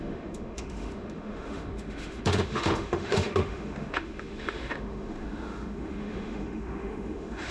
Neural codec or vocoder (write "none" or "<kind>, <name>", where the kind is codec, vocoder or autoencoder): autoencoder, DAC-VAE